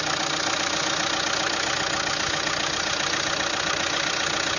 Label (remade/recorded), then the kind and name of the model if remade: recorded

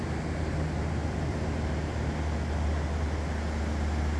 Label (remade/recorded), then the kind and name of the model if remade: recorded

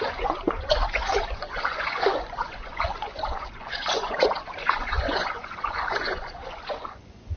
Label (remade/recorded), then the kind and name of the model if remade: remade, vocoder, Vocos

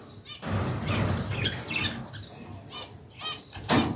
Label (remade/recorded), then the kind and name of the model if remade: recorded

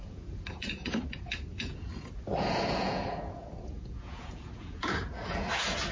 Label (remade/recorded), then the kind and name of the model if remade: remade, vocoder, Vocos